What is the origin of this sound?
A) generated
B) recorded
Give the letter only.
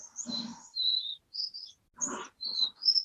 B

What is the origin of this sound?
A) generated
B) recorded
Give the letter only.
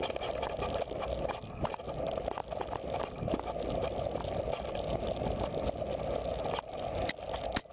B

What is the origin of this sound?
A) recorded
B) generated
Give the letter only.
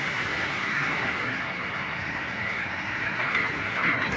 B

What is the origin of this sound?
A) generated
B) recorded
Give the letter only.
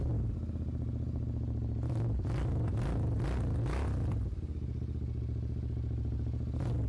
B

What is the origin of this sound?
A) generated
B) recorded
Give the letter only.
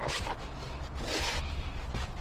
B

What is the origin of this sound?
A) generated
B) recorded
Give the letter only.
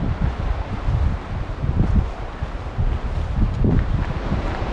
B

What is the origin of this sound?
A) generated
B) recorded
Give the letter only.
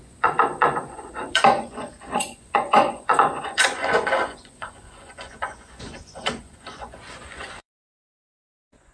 A